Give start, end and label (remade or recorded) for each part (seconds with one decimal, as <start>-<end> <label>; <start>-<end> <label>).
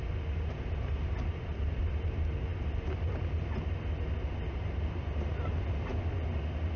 0.0-6.8 recorded